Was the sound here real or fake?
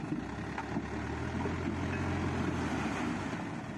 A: real